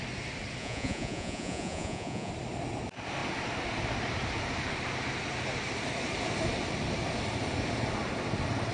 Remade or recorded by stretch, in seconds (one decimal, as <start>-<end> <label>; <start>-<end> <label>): 0.0-0.6 recorded; 0.6-2.3 remade; 2.3-8.7 recorded